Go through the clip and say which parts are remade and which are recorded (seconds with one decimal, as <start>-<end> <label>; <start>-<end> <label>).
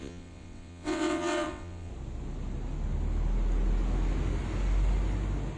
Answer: 0.0-1.9 remade; 1.9-5.6 recorded